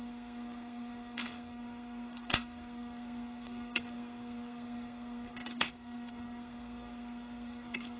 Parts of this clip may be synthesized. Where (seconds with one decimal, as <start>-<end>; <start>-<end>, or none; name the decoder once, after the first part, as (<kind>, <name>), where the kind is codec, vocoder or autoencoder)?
0.0-8.0 (codec, SNAC)